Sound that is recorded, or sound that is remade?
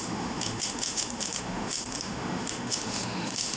remade